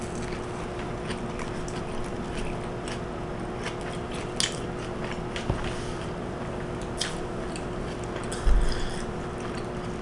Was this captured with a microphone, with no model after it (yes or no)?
yes